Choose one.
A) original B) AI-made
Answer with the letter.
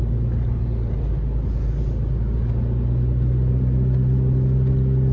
A